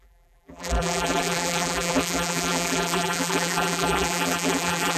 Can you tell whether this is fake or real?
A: fake